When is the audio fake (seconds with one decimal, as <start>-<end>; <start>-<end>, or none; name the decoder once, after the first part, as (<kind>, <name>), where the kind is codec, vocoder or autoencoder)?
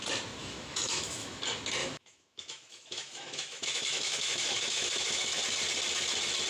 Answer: 0.4-1.4 (autoencoder, DAC-VAE); 1.8-5.4